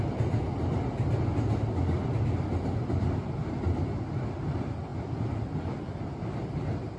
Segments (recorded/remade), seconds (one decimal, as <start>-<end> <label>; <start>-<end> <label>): 0.0-7.0 recorded